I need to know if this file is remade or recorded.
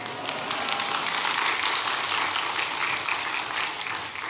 recorded